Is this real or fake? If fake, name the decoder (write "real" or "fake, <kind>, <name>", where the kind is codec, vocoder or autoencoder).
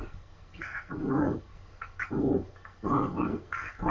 fake, codec, SNAC